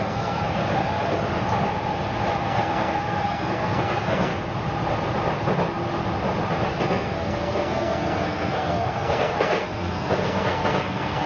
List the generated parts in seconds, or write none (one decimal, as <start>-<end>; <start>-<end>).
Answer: 0.0-0.6; 2.4-4.3; 6.8-11.3